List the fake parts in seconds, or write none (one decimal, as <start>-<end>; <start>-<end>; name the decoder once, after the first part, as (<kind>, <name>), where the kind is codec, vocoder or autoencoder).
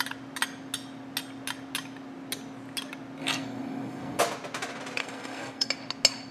3.2-4.2 (codec, SNAC); 5.0-5.7